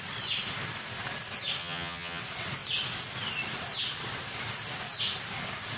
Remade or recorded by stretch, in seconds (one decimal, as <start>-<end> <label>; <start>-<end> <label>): 0.0-1.6 recorded; 1.6-2.2 remade; 2.2-5.8 recorded